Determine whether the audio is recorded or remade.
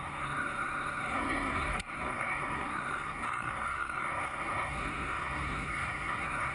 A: remade